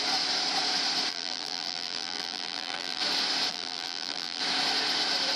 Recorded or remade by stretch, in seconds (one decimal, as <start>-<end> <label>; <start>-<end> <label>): 0.0-1.1 recorded; 1.1-3.0 remade; 3.0-3.5 recorded; 3.5-4.4 remade; 4.4-5.4 recorded